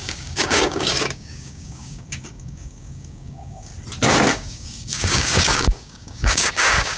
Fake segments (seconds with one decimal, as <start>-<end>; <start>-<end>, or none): 0.0-3.7; 4.3-7.0